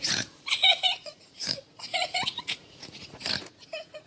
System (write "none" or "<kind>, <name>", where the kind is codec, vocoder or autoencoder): vocoder, Vocos